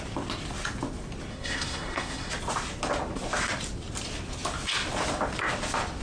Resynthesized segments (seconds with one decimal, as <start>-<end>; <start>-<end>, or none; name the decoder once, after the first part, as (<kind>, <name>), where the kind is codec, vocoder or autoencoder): 1.3-2.3 (codec, SNAC)